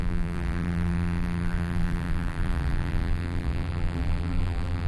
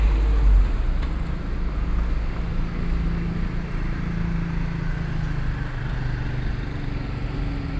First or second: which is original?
second